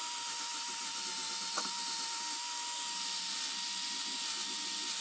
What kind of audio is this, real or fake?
real